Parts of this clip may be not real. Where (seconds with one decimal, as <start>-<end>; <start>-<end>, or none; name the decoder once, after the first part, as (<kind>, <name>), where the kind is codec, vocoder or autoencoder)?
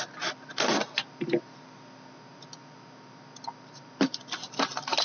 none